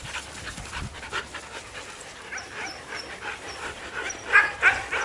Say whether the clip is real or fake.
fake